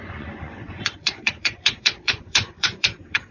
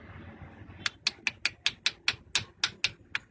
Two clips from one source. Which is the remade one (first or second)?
first